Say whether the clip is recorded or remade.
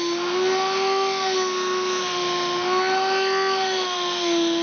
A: remade